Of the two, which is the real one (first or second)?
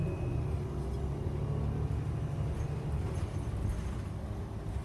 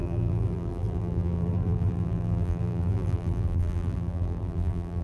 first